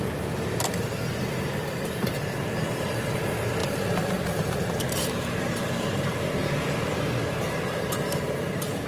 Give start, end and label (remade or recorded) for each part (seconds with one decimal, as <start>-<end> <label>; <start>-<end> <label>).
0.0-3.6 recorded; 3.6-6.9 remade; 6.9-8.9 recorded